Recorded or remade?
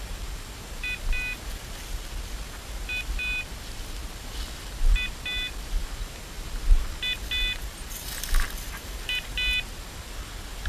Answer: recorded